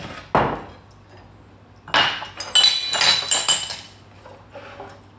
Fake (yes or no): no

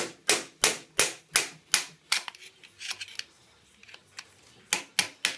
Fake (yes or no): no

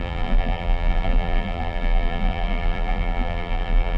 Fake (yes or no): yes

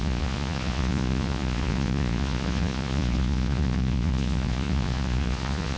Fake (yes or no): yes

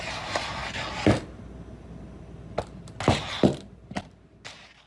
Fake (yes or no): no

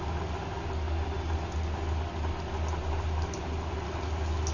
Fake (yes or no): no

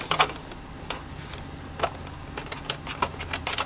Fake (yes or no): no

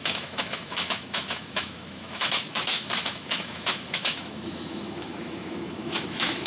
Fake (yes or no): yes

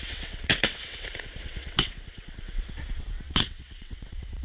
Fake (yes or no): yes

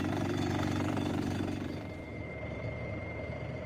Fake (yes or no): yes